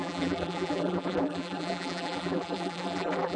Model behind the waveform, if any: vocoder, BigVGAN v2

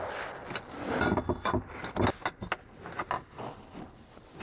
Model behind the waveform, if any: none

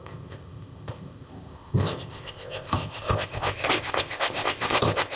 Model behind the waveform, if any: codec, ZipCodec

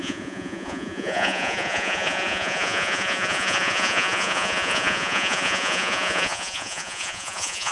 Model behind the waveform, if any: vocoder, Vocos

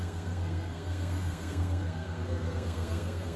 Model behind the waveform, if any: codec, SNAC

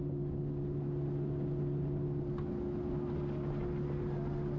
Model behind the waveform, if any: none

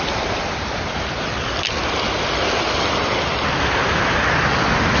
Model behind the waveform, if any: none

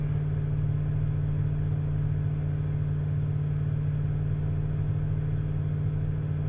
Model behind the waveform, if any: none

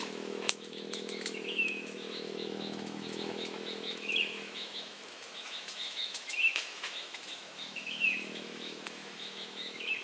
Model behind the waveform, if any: autoencoder, DAC-VAE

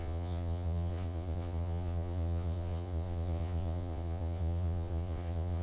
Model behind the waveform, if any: vocoder, Vocos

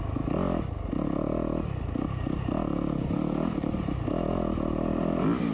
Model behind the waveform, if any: none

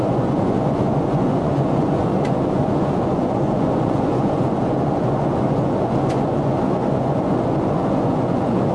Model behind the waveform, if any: vocoder, Vocos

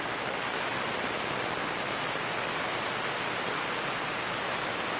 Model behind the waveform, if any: none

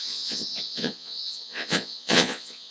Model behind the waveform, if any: vocoder, Vocos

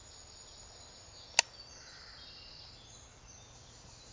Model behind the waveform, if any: none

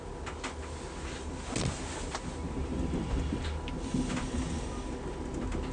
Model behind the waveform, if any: none